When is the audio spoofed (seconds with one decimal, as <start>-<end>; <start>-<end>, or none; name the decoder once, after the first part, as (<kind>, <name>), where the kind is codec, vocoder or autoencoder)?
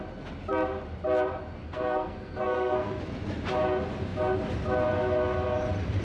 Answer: 1.6-3.0 (codec, SNAC)